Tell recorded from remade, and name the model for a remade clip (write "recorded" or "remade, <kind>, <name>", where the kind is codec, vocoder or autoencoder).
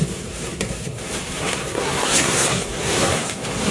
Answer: remade, codec, SNAC